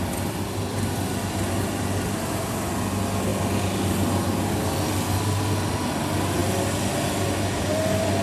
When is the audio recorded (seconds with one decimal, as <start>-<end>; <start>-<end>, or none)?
0.0-8.2